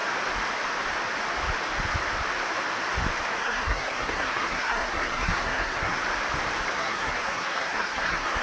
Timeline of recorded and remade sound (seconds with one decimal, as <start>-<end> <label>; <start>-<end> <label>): 0.0-3.3 recorded; 3.3-6.0 remade; 6.0-6.7 recorded; 6.7-8.4 remade